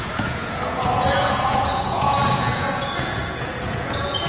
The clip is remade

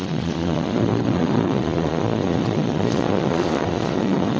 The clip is remade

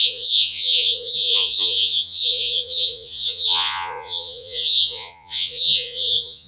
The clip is remade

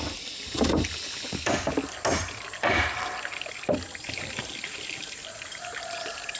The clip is recorded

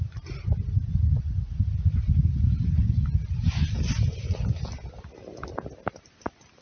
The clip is recorded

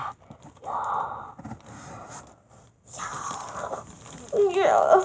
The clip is recorded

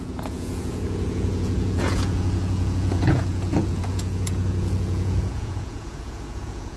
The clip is remade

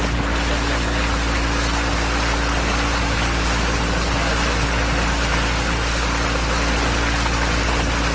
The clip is recorded